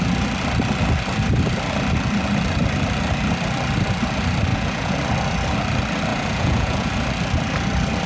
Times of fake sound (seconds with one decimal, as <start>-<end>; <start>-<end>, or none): 4.5-5.0; 6.1-6.9